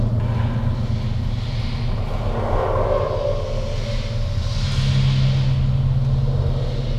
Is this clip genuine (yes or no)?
yes